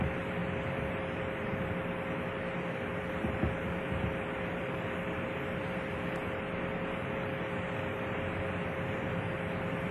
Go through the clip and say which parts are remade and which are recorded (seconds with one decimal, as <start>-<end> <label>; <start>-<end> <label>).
0.0-9.9 recorded